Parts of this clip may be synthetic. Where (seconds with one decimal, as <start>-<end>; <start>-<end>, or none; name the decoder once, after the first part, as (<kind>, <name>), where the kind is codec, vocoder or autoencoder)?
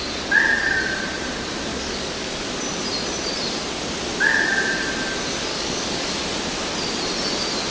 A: 1.7-2.5 (codec, DAC); 5.5-6.1